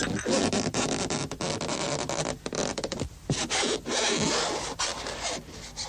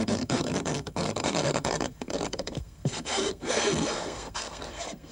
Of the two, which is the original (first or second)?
first